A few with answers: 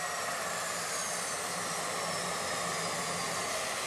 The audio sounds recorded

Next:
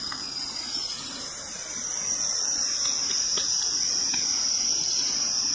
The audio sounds recorded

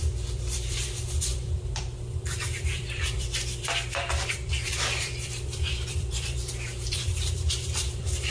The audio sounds remade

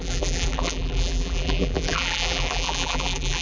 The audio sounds remade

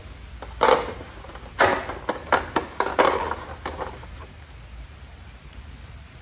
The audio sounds recorded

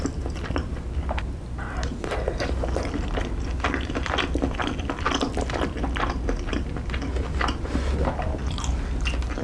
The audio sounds recorded